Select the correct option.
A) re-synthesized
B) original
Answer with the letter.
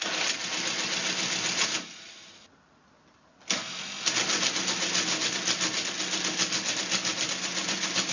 B